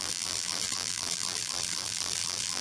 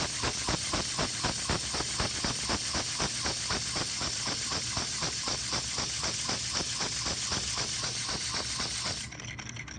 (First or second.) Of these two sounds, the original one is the second